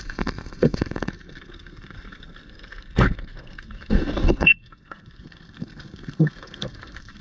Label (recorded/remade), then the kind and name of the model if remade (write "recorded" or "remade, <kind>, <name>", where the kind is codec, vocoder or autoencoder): remade, codec, SNAC